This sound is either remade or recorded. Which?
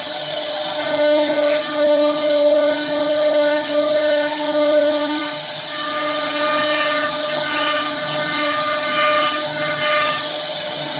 remade